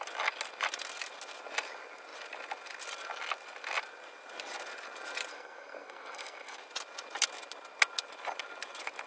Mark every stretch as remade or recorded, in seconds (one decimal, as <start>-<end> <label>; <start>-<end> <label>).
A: 0.0-5.3 recorded; 5.3-6.6 remade; 6.6-9.1 recorded